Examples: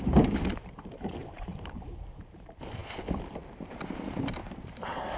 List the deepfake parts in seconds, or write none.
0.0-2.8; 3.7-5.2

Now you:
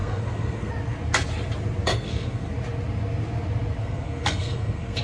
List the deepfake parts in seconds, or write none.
0.0-0.7; 1.9-2.5; 3.8-5.0

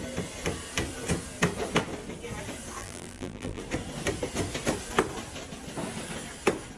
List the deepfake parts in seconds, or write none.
2.8-3.6

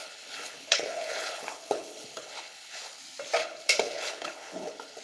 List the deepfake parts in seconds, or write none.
0.0-3.0; 3.4-5.0